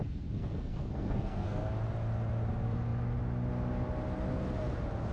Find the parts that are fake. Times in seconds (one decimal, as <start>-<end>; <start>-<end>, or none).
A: 0.0-1.7